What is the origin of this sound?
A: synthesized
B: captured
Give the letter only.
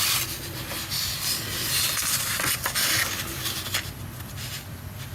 B